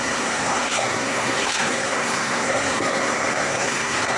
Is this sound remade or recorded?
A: remade